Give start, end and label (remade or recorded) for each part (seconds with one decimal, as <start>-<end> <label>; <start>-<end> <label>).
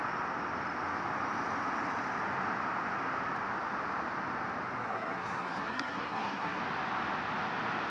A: 0.0-4.8 recorded; 4.8-6.6 remade; 6.6-7.9 recorded